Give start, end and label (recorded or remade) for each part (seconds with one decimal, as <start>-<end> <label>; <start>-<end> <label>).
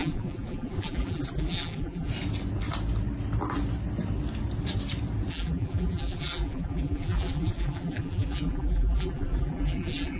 0.0-2.1 remade; 2.1-5.3 recorded; 5.3-10.2 remade